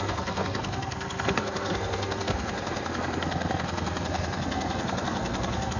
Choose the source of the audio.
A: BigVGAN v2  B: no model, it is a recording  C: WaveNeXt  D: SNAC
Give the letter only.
D